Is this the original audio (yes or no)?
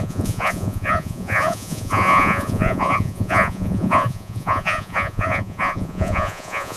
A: no